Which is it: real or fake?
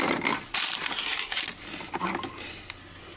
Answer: real